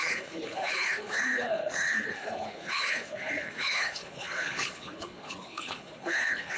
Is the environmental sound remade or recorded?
remade